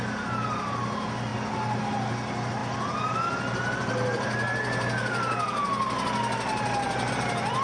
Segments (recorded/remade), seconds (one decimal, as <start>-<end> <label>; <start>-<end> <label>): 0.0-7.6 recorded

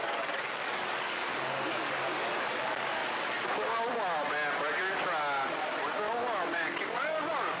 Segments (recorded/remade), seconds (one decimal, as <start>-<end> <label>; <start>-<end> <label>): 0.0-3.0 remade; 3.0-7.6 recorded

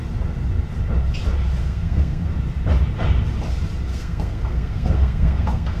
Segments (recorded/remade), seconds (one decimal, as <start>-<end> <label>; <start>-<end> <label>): 0.0-1.6 recorded; 1.6-2.3 remade; 2.3-3.9 recorded; 3.9-5.8 remade